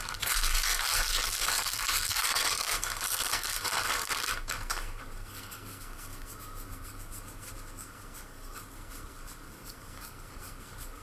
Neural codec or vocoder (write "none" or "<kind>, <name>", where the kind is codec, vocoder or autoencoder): codec, SNAC